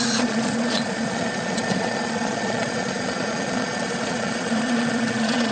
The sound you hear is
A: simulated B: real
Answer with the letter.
A